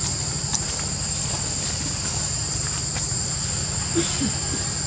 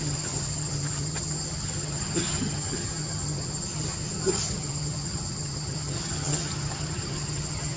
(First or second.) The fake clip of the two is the second